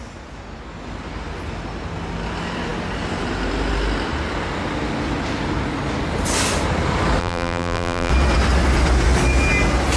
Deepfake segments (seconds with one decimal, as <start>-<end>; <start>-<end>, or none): 7.2-8.1